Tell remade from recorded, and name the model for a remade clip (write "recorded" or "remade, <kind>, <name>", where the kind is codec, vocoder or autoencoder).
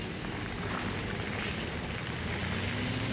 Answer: recorded